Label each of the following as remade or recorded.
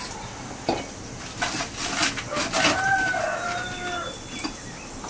recorded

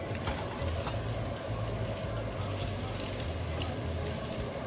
recorded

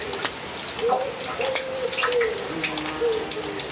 recorded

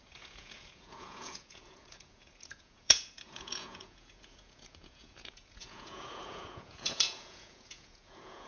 remade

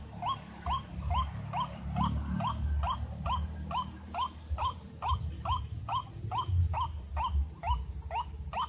recorded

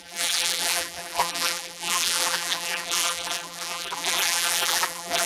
remade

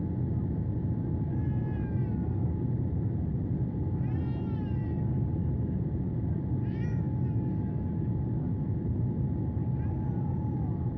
recorded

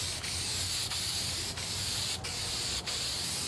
recorded